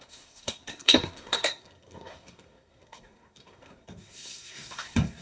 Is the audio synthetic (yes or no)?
yes